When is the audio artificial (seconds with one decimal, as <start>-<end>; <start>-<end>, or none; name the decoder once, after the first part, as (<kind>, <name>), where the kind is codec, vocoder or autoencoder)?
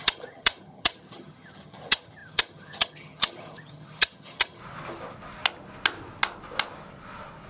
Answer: 0.0-4.6 (vocoder, HiFi-GAN)